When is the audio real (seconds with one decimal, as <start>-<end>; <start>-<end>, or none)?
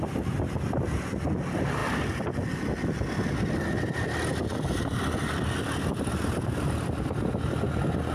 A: 0.0-8.1